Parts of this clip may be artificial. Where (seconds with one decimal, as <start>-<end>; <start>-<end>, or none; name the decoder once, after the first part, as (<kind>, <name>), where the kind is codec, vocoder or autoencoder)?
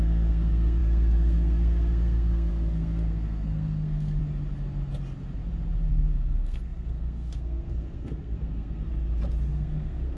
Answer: 0.0-4.2 (codec, SNAC); 5.9-8.9; 9.5-10.2